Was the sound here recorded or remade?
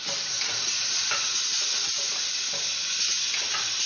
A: recorded